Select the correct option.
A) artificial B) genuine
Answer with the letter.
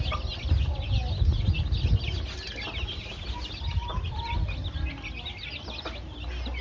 B